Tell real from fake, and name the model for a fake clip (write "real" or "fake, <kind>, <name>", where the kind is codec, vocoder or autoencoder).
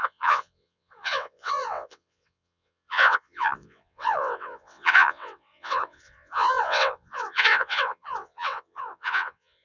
fake, vocoder, WaveNeXt